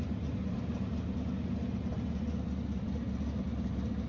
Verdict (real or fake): real